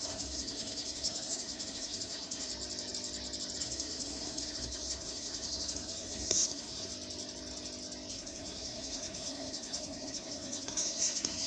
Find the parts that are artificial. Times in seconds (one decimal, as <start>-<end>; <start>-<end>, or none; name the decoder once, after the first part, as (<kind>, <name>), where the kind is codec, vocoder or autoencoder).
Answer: 0.0-2.5 (codec, SNAC); 3.6-6.9; 8.1-11.5